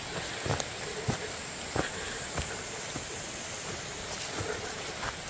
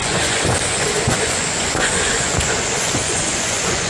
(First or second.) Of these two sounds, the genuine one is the first